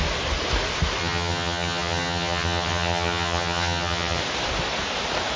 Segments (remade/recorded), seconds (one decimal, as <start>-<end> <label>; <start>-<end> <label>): 0.0-1.0 recorded; 1.0-4.2 remade; 4.2-5.4 recorded